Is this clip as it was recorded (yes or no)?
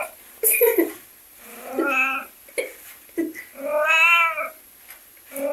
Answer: yes